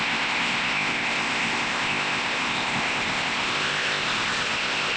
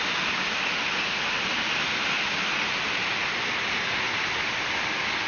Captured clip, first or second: second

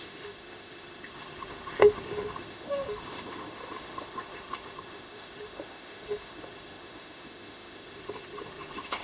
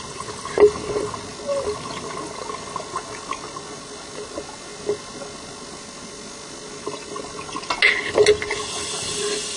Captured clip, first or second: second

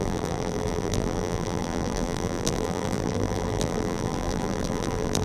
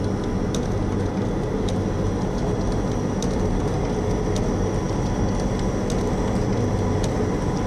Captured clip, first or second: second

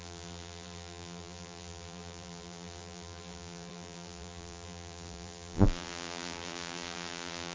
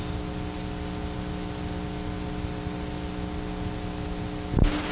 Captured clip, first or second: second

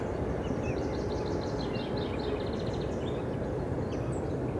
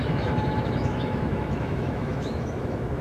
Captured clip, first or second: first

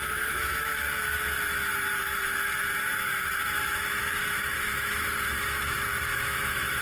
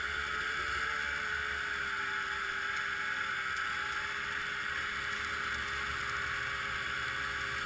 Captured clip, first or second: second